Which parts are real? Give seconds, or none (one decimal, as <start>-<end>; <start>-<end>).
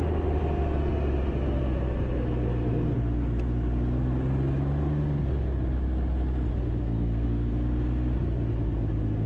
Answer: 0.0-6.8; 7.5-9.3